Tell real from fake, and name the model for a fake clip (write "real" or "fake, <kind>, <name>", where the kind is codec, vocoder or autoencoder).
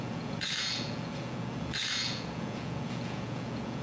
fake, vocoder, Vocos